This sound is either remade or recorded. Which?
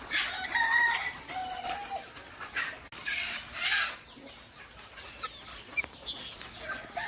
recorded